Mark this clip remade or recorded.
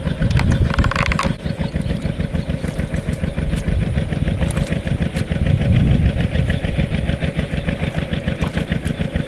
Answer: recorded